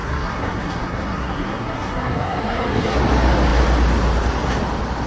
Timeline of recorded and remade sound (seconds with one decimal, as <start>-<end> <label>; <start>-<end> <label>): 0.0-3.0 remade; 3.0-5.1 recorded